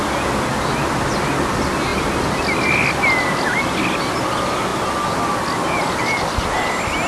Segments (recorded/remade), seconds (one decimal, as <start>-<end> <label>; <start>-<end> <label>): 0.0-7.1 recorded